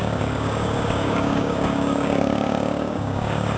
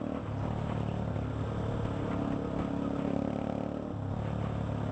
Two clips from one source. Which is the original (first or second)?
second